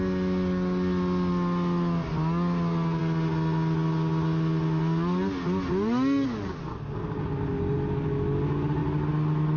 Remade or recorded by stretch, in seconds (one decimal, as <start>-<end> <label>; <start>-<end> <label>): 0.0-9.6 recorded